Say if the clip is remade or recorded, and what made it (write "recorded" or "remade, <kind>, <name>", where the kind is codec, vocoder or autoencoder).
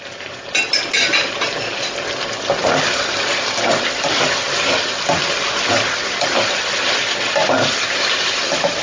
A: recorded